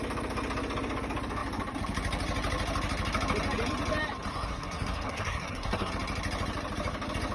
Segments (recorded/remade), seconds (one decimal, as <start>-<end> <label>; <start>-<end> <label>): 0.0-4.3 recorded; 4.3-5.9 remade; 5.9-7.3 recorded